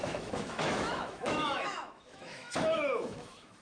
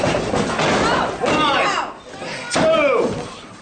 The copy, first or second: first